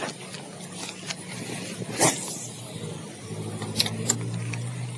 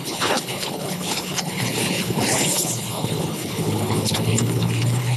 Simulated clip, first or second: second